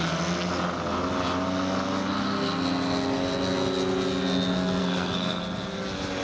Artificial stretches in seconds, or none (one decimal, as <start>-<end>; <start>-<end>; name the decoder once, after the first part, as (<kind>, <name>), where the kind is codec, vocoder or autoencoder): 4.8-5.4 (codec, SNAC)